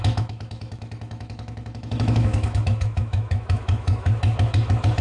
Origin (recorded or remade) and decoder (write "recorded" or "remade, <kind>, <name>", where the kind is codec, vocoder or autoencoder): remade, autoencoder, DAC-VAE